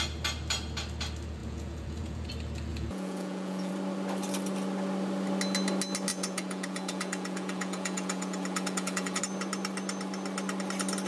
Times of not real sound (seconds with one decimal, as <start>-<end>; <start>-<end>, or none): 1.4-2.3; 2.7-3.7; 6.1-9.2